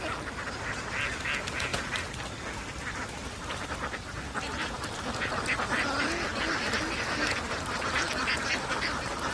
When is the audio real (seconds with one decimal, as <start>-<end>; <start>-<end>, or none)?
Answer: 0.0-9.3